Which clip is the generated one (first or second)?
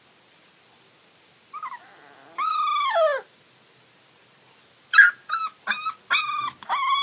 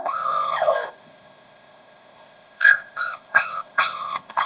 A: second